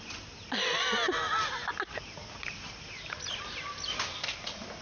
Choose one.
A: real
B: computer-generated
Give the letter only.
A